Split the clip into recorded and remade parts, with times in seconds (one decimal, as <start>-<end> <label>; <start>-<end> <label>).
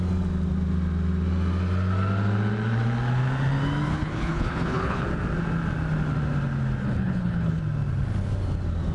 0.0-3.9 recorded; 3.9-5.0 remade; 5.0-6.8 recorded; 6.8-7.6 remade; 7.6-8.9 recorded